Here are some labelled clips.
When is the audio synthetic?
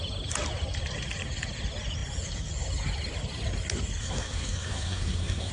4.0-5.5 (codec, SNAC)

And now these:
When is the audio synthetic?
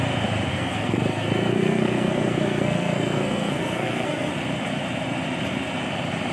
0.5-4.3 (codec, SNAC)